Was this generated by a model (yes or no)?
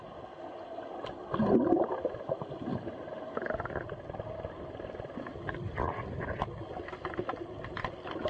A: no